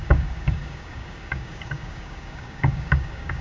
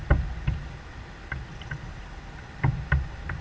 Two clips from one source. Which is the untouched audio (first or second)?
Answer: second